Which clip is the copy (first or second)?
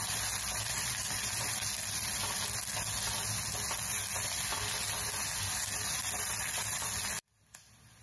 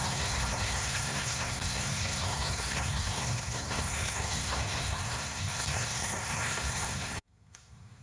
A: second